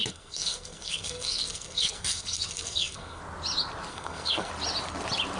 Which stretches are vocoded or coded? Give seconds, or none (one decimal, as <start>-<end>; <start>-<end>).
0.0-3.2; 3.9-4.5